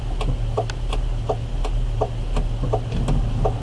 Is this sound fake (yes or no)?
no